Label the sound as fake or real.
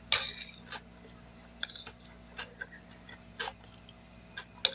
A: real